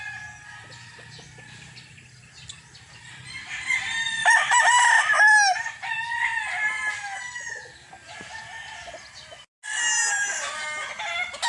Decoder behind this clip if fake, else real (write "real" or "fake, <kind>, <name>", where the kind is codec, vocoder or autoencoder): real